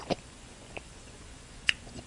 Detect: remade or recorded remade